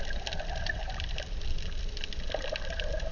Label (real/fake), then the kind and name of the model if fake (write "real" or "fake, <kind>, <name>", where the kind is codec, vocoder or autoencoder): real